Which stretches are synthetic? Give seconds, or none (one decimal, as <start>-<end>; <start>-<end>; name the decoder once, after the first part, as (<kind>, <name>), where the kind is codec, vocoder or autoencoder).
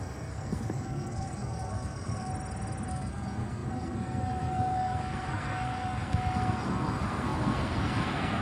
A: 0.0-2.3 (codec, SNAC); 2.9-8.4